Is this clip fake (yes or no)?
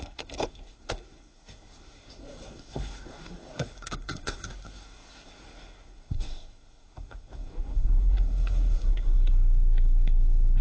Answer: yes